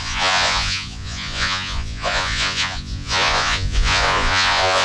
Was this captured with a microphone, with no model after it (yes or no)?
no